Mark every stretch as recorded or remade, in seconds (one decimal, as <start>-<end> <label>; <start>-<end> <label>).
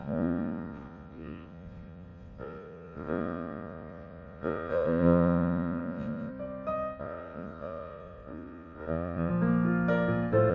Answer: 0.0-6.3 remade; 6.3-7.0 recorded; 7.0-9.3 remade; 9.3-10.5 recorded